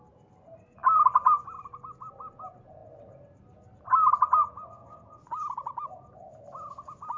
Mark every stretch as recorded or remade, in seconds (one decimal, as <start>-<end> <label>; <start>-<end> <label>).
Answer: 0.0-7.2 recorded